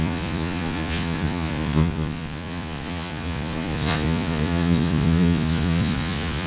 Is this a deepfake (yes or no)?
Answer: yes